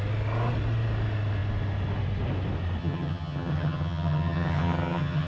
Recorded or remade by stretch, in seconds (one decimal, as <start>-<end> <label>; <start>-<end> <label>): 0.0-2.8 recorded; 2.8-5.3 remade

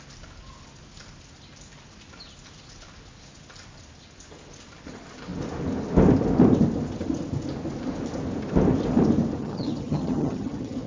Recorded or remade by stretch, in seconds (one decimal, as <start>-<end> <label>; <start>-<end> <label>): 0.0-9.4 recorded; 9.4-10.9 remade